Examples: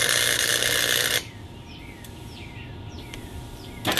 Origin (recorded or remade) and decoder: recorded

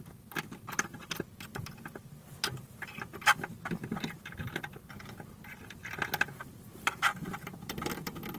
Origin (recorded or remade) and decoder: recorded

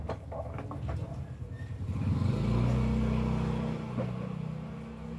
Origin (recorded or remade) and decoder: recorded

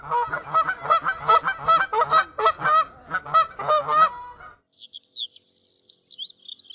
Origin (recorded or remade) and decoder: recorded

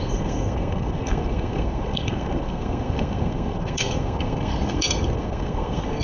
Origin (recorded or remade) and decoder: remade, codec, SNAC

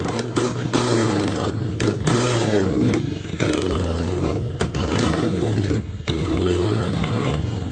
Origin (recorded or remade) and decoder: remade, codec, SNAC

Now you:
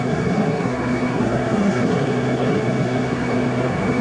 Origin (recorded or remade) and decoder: remade, codec, SNAC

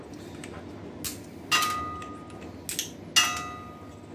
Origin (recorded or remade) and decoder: recorded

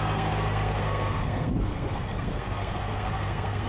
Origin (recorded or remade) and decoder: remade, codec, SNAC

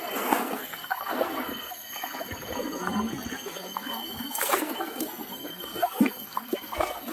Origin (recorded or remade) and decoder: remade, codec, SNAC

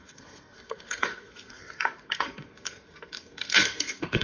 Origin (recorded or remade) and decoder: remade, codec, SNAC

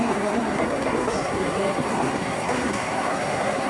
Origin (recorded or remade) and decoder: remade, codec, SNAC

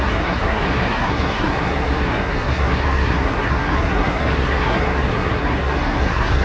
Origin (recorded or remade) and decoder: remade, codec, SNAC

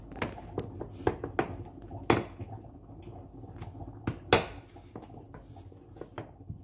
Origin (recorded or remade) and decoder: recorded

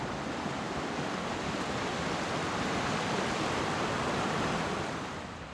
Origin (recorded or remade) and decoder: recorded